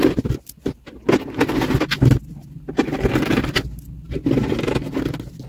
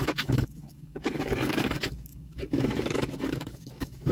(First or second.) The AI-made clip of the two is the second